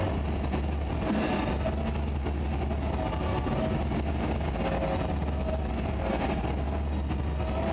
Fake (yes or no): no